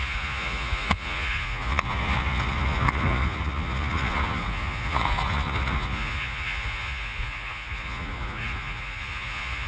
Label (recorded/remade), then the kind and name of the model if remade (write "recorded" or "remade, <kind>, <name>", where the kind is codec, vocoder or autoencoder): remade, vocoder, Vocos